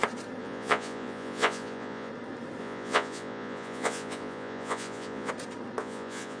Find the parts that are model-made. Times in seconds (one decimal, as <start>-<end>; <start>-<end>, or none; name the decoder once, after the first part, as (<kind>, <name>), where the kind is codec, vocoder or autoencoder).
0.4-2.1 (vocoder, Vocos); 2.6-5.3; 5.8-6.4